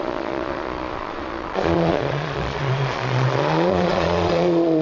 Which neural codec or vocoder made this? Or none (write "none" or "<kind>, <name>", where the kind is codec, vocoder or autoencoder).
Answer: vocoder, Vocos